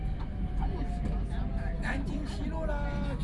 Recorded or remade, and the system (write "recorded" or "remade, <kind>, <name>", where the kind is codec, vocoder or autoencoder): recorded